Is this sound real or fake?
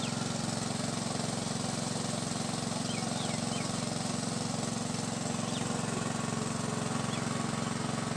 real